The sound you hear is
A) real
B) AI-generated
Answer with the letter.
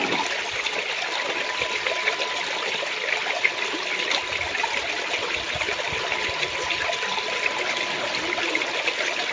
A